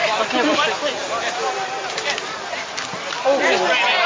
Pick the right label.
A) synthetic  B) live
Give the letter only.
B